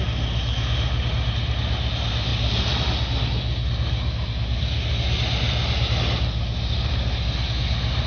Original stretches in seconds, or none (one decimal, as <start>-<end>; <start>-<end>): 0.0-8.1